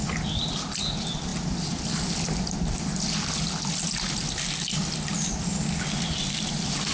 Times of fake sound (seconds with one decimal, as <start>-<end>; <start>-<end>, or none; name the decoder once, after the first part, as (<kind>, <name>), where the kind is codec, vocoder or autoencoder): none